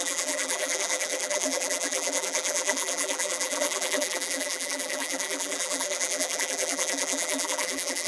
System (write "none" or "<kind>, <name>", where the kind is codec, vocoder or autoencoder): vocoder, BigVGAN v2